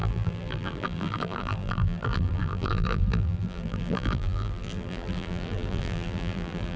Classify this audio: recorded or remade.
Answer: remade